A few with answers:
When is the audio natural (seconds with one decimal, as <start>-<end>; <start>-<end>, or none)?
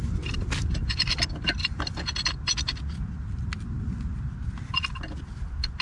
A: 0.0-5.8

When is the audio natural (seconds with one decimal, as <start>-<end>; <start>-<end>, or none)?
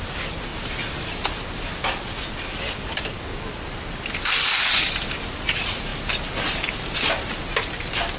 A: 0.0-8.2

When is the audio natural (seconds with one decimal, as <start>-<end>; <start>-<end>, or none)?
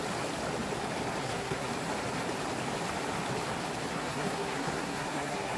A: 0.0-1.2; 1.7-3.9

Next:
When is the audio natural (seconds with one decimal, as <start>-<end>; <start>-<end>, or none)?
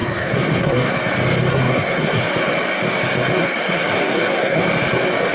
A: 1.0-1.5; 2.2-3.4; 4.6-5.3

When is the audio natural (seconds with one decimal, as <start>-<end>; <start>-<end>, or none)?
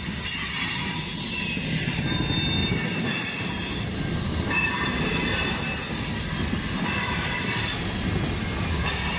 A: 0.0-2.6; 4.7-9.2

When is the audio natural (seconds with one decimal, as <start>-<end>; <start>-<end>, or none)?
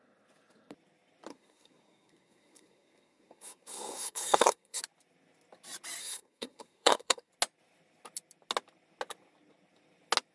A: 0.0-1.3; 4.8-6.0; 7.3-10.3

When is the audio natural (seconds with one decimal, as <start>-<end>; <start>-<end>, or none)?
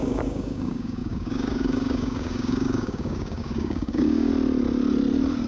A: 4.3-5.5